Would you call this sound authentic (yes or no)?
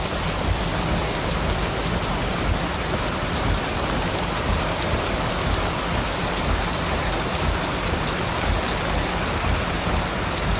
yes